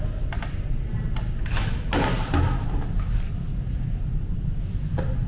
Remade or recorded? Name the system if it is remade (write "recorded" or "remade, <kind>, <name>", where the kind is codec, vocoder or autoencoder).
recorded